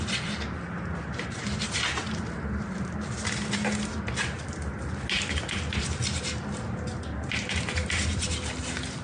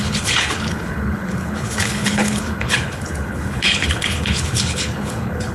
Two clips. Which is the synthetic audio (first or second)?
second